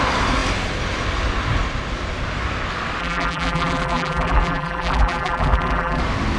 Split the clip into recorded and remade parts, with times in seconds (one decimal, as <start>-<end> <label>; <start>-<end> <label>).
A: 0.0-3.0 recorded; 3.0-6.0 remade; 6.0-6.4 recorded